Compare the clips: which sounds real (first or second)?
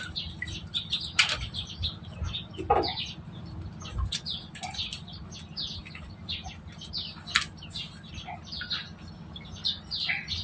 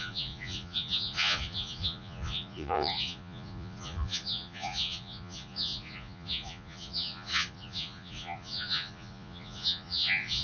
first